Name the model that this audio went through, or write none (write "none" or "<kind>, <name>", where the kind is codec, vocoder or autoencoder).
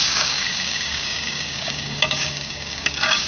codec, DAC